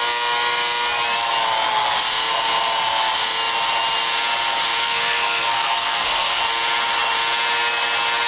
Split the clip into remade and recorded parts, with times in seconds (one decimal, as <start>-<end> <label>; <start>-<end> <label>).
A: 0.0-4.8 recorded; 4.8-6.4 remade; 6.4-8.3 recorded